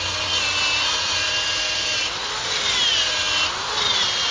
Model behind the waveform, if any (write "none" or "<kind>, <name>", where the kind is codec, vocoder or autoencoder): none